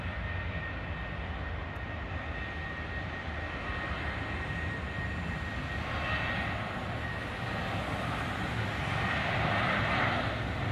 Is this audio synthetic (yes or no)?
no